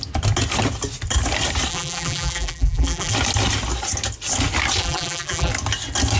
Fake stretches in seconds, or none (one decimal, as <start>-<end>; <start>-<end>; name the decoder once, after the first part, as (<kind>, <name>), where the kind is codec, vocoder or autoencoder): 1.7-3.1 (vocoder, BigVGAN v2); 4.8-5.5